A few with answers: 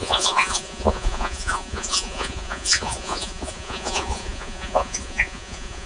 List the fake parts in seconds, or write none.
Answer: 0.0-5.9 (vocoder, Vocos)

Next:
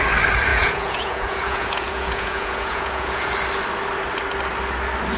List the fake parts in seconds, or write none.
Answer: 0.5-3.3 (vocoder, Vocos)

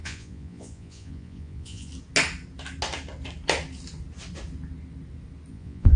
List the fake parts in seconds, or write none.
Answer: 0.0-1.9 (vocoder, Vocos); 5.5-6.0

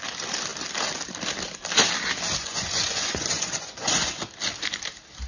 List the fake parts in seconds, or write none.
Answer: 2.4-4.2 (vocoder, Vocos)

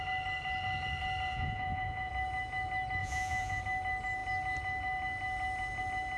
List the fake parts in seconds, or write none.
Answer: 1.3-2.1 (vocoder, Vocos); 3.0-3.6